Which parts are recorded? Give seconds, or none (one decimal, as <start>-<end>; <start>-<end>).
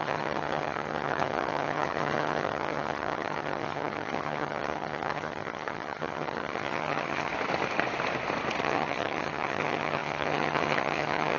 7.3-8.6